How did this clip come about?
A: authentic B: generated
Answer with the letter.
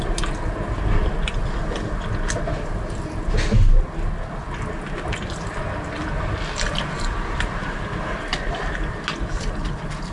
A